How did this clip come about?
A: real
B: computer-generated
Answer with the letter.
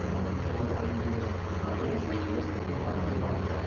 A